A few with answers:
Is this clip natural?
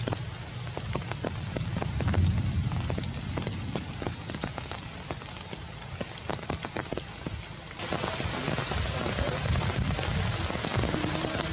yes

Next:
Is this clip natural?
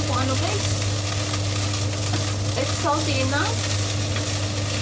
yes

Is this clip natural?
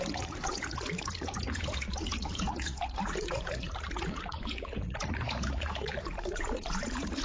no